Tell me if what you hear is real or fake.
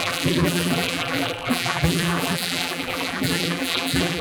fake